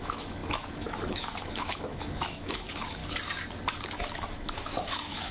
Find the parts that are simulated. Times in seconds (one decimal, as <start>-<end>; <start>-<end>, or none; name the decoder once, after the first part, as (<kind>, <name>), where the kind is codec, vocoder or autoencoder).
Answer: 0.0-3.0 (autoencoder, DAC-VAE); 4.1-5.3